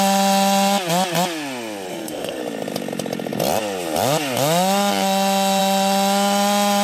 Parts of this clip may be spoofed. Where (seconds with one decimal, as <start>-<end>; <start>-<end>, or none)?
1.9-2.4